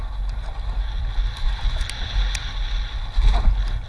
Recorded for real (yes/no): yes